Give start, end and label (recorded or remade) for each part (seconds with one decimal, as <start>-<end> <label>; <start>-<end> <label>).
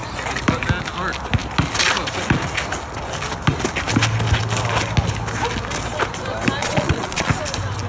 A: 0.0-6.6 recorded; 6.6-7.3 remade; 7.3-7.9 recorded